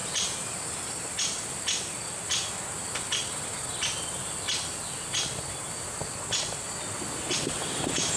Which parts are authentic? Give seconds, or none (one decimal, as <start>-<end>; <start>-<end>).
0.0-8.2